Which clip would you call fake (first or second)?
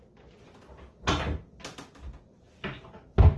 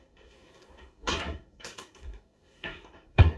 second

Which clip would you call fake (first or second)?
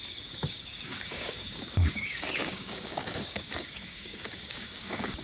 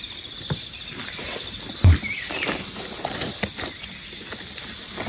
first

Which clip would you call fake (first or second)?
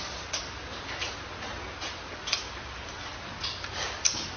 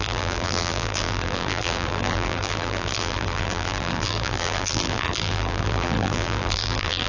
second